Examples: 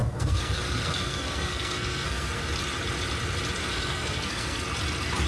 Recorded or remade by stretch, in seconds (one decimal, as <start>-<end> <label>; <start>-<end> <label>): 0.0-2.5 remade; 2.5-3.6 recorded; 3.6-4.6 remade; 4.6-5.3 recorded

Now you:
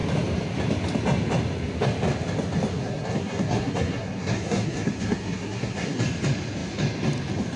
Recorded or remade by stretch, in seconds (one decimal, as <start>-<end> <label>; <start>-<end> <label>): 0.0-2.7 recorded; 2.7-6.0 remade; 6.0-7.6 recorded

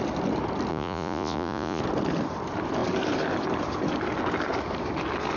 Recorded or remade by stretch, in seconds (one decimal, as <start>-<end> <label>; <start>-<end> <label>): 0.0-0.7 recorded; 0.7-1.8 remade; 1.8-5.4 recorded